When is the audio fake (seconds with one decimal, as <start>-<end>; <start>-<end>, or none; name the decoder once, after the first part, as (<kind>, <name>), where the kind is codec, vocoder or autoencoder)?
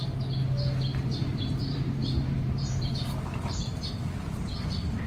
0.9-2.9 (vocoder, BigVGAN v2)